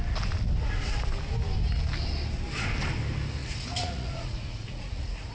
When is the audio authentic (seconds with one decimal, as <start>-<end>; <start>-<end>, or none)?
0.0-3.4